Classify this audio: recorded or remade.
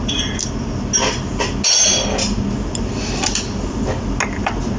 recorded